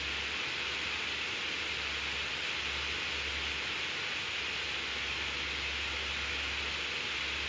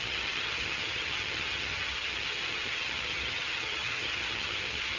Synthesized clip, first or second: second